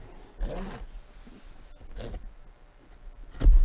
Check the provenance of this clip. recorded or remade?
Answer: recorded